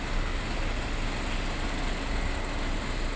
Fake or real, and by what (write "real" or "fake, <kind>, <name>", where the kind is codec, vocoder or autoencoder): real